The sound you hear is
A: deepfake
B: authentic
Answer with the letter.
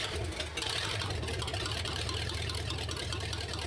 A